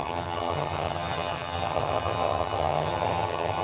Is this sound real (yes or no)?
no